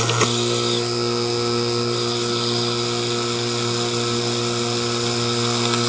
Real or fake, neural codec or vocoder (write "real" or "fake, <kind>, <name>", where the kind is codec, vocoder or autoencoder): real